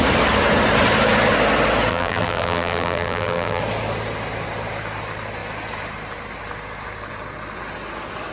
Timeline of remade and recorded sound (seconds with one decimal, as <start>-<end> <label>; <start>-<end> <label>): 0.0-1.9 recorded; 1.9-3.6 remade; 3.6-8.3 recorded